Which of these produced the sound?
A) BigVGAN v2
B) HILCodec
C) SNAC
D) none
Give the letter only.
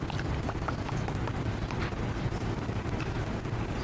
D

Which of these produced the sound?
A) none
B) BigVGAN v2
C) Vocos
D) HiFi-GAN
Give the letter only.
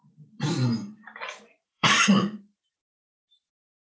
B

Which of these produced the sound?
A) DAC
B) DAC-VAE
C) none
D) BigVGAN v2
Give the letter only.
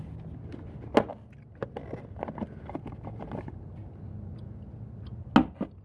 C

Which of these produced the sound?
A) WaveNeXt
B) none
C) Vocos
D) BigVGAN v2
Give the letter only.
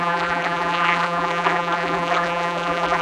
D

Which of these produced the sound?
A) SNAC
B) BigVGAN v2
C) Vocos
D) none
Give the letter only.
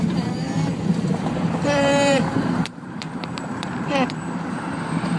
B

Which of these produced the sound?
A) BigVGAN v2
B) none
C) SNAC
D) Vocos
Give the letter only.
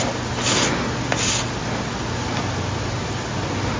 B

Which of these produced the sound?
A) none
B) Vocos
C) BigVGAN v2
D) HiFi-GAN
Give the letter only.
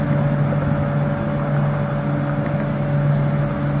A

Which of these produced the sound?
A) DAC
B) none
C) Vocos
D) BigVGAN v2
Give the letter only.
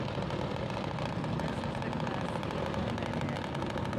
B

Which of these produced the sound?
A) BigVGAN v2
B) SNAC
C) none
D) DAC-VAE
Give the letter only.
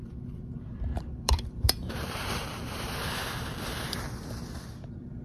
A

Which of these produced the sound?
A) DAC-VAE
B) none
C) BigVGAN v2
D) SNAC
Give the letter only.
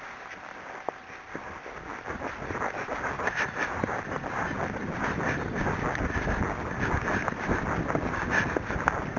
B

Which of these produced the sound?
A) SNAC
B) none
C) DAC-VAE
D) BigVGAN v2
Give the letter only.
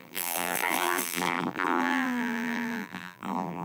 D